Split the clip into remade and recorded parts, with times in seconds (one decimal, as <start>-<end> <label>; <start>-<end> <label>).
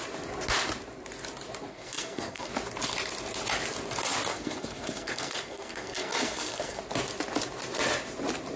0.0-1.7 recorded; 1.7-2.5 remade; 2.5-4.3 recorded; 4.3-6.8 remade; 6.8-8.6 recorded